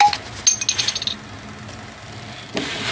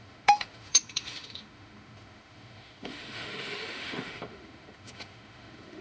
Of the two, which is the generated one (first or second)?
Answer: second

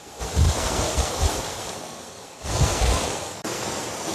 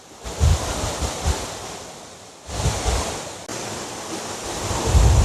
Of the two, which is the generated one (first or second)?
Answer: first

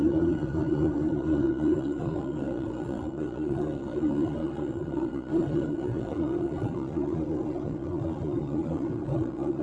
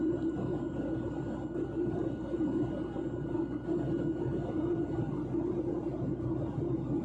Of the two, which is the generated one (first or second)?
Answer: first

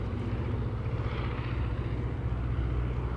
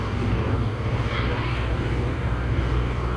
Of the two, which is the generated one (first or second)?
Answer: second